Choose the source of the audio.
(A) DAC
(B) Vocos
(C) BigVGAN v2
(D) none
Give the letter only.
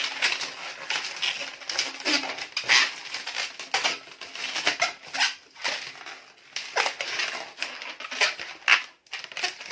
D